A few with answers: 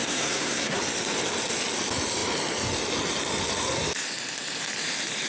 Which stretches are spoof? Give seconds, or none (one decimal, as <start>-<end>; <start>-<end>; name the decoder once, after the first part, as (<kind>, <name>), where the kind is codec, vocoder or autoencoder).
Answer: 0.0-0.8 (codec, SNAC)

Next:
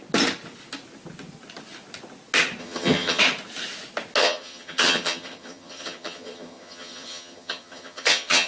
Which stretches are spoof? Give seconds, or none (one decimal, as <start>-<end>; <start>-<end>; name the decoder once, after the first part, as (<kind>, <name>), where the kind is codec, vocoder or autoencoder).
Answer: 2.6-3.2 (vocoder, HiFi-GAN); 4.2-8.5

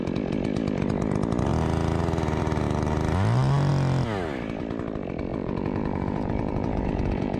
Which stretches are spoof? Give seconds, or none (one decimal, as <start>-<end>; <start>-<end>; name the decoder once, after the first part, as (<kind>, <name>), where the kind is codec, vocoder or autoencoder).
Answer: 5.3-7.4 (vocoder, Vocos)

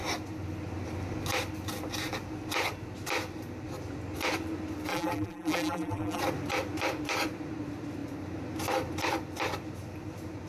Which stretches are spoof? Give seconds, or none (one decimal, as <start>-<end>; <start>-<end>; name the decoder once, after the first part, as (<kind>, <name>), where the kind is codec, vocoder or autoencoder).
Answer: 4.9-6.2 (vocoder, BigVGAN v2)

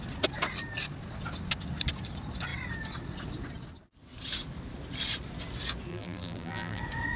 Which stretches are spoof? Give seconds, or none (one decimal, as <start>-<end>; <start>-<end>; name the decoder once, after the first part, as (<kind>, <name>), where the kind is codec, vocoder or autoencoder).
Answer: 5.9-6.8 (vocoder, BigVGAN v2)

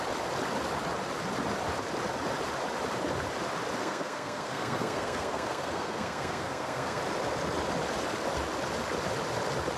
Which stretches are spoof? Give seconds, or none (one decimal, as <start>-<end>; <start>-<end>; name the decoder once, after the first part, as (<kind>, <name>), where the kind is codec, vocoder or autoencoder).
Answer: 3.8-7.0 (codec, SNAC)

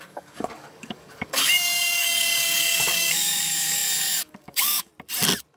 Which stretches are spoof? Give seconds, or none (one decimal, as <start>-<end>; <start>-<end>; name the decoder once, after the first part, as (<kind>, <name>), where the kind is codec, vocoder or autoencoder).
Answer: 0.0-4.9 (codec, DAC)

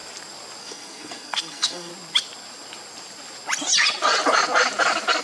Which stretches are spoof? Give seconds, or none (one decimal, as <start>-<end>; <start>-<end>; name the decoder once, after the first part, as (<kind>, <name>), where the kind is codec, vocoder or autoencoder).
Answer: 0.6-1.9 (codec, SNAC)